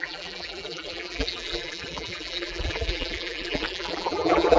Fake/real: fake